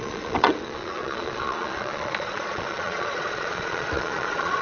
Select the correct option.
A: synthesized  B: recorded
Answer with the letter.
A